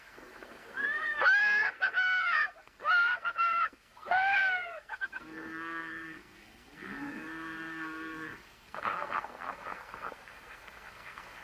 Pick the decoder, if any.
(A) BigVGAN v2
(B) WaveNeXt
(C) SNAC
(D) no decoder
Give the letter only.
C